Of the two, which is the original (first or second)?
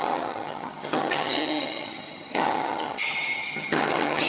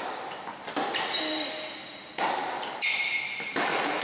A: second